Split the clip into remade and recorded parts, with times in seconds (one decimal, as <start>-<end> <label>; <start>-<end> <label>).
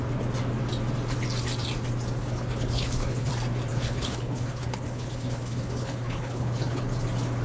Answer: 0.0-2.2 recorded; 2.2-3.3 remade; 3.3-3.7 recorded; 3.7-6.8 remade; 6.8-7.4 recorded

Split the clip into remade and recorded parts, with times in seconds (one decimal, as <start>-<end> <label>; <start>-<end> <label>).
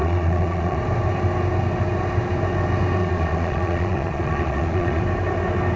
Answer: 0.0-0.8 remade; 0.8-3.0 recorded; 3.0-5.0 remade; 5.0-5.8 recorded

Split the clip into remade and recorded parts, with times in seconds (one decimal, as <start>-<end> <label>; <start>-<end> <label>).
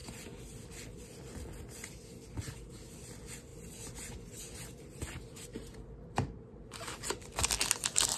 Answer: 0.0-5.5 recorded; 5.5-7.2 remade; 7.2-8.2 recorded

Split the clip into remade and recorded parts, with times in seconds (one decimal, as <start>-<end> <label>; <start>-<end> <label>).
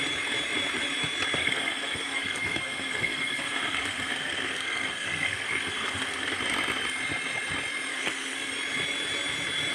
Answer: 0.0-1.4 recorded; 1.4-6.4 remade; 6.4-7.9 recorded; 7.9-8.5 remade; 8.5-9.7 recorded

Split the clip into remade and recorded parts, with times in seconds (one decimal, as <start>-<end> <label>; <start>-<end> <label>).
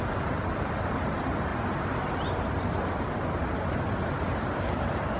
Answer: 0.0-5.2 recorded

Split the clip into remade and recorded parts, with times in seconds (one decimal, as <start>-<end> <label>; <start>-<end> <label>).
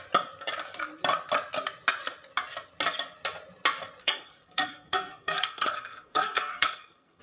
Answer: 0.0-4.0 recorded; 4.0-7.2 remade